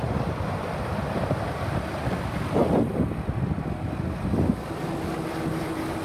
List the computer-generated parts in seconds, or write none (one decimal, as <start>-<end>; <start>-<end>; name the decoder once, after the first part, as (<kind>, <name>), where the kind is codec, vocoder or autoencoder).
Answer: none

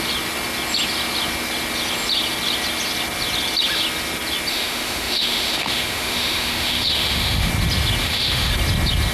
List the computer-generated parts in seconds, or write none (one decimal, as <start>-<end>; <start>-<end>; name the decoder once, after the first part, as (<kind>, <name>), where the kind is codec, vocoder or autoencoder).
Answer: 4.5-7.5 (autoencoder, DAC-VAE); 8.0-8.5

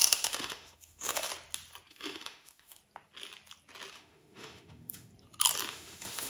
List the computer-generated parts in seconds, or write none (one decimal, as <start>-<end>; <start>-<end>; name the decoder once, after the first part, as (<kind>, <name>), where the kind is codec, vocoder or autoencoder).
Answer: 0.0-1.3 (autoencoder, DAC-VAE); 1.9-2.8; 3.9-5.1; 5.7-6.3